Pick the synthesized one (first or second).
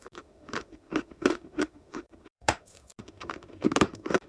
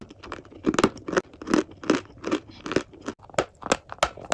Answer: first